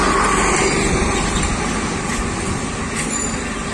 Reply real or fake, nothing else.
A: real